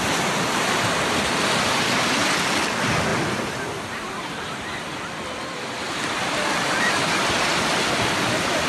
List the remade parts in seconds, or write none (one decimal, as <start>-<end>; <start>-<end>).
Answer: none

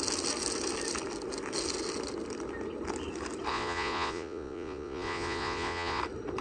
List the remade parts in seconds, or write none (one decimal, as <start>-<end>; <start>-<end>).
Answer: 3.5-6.0

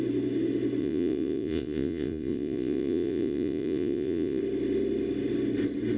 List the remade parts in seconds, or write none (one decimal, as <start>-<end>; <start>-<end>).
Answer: 0.8-4.4

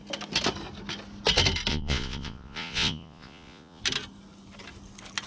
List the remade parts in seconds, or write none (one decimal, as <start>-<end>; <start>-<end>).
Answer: 1.7-3.8

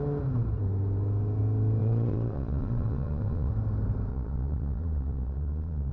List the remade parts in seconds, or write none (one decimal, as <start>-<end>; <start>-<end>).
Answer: 1.8-3.5; 4.1-5.9